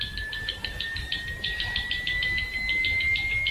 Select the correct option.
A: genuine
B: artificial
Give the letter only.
A